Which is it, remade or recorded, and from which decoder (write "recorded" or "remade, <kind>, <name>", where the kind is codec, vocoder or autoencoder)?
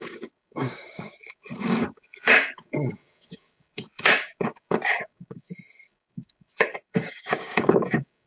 remade, codec, DAC